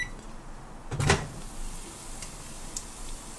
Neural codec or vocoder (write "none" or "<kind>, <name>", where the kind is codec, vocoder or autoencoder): none